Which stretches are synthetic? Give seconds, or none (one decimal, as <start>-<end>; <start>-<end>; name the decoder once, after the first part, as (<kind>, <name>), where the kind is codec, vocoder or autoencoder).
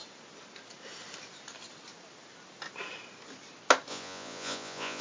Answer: 3.9-5.0 (vocoder, Vocos)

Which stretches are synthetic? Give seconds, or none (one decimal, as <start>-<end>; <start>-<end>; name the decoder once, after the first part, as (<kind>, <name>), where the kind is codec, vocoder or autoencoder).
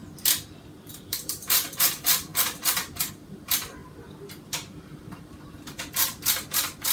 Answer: 0.9-3.8 (vocoder, BigVGAN v2); 4.8-6.9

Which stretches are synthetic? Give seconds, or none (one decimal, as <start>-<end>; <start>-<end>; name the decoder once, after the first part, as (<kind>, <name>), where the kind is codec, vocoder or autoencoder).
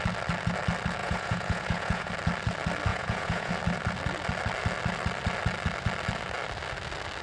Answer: 1.0-2.1 (vocoder, Vocos); 2.9-3.5